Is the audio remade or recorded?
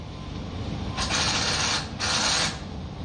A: recorded